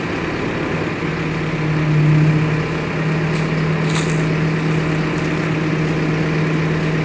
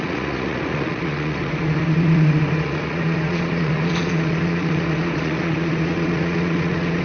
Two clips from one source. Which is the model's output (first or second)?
second